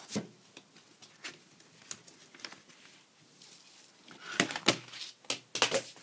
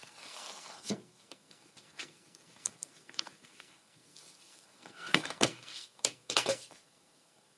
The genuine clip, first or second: first